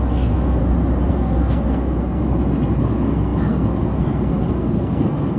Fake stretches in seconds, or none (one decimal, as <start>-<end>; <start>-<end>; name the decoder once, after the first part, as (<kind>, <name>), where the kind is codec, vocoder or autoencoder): 0.0-0.6 (codec, SNAC); 1.1-2.2; 2.8-5.4